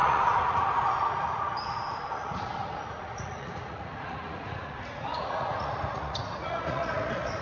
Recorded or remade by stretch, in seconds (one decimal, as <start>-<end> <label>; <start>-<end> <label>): 0.0-7.4 remade